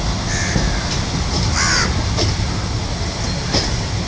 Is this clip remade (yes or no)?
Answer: no